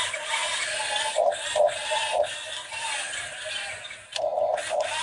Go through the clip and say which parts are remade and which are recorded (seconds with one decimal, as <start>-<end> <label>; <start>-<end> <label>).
0.0-4.3 remade; 4.3-5.0 recorded